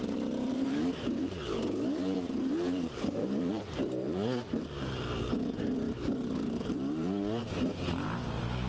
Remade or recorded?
remade